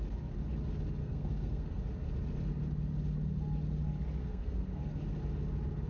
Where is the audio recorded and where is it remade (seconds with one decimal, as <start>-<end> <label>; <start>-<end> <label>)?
0.0-1.0 recorded; 1.0-1.8 remade; 1.8-4.2 recorded; 4.2-4.8 remade; 4.8-5.9 recorded